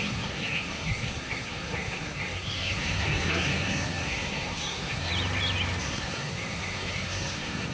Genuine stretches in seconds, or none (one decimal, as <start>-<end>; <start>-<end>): 5.1-5.8